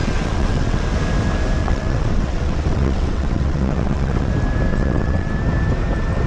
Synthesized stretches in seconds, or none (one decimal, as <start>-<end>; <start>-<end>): 0.0-0.8; 1.6-4.3; 4.7-5.3